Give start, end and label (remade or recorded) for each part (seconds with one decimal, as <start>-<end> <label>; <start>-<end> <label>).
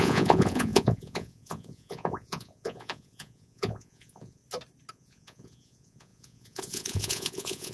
0.0-4.4 remade; 4.4-4.9 recorded; 4.9-7.7 remade